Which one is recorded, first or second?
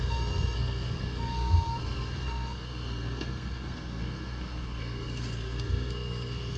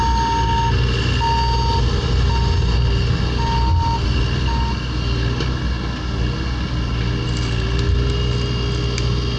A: second